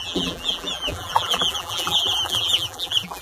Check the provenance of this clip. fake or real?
fake